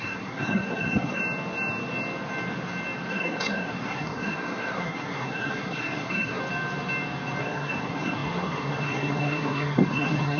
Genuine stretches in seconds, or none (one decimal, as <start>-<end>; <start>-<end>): 1.2-3.1; 6.4-7.4